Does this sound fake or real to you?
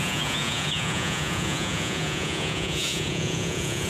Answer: fake